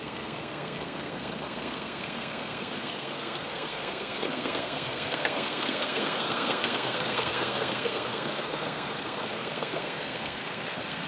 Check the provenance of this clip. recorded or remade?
remade